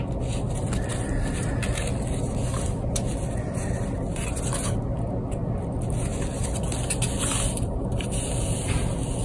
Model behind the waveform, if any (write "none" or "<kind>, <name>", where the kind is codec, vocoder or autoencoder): none